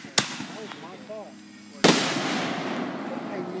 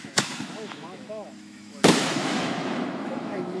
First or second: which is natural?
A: first